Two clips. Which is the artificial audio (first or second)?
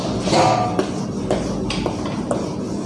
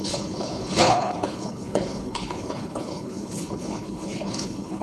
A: second